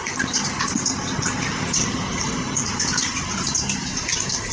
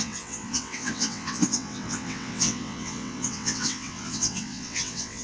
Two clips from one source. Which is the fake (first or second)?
second